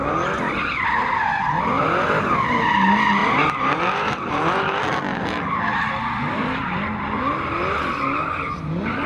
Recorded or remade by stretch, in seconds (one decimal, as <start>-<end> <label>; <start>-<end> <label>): 0.0-3.2 recorded; 3.2-4.8 remade; 4.8-9.1 recorded